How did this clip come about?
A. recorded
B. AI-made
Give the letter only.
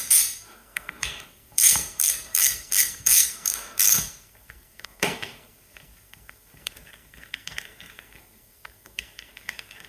B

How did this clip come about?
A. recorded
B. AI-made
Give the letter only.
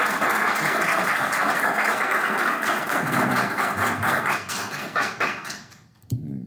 B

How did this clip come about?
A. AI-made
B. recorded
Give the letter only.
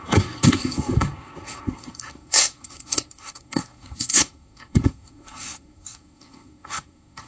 A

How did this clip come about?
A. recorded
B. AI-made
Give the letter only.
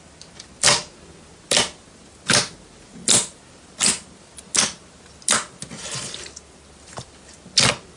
A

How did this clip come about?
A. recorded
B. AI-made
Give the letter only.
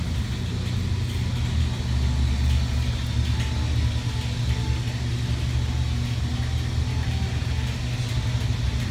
A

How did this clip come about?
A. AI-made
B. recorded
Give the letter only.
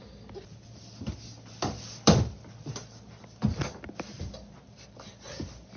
B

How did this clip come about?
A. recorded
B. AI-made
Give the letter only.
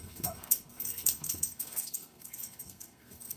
B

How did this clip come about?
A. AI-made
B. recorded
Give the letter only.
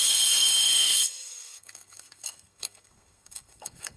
A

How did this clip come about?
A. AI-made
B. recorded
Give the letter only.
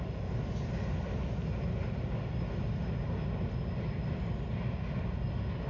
B